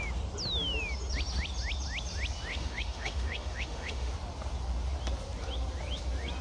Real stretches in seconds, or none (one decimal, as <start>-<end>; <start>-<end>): 0.0-2.5; 4.1-6.4